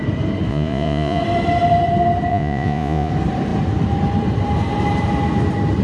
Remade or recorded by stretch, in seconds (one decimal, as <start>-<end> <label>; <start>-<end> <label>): 0.0-0.5 recorded; 0.5-1.2 remade; 1.2-2.3 recorded; 2.3-3.1 remade; 3.1-5.8 recorded